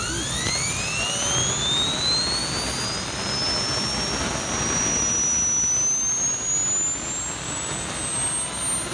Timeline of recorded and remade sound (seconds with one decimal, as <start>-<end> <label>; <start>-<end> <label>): 0.0-8.9 recorded